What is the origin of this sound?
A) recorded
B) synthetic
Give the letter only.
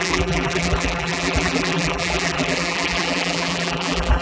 B